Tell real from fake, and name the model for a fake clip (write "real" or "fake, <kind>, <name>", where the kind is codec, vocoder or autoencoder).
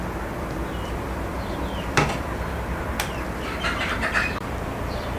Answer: fake, vocoder, BigVGAN v2